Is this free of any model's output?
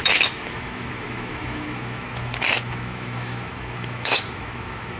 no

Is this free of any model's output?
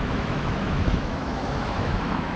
no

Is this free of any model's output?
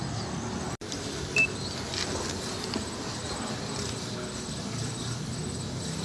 yes